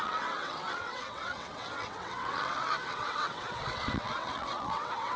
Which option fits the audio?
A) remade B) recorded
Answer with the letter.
A